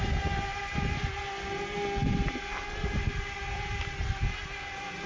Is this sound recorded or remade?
recorded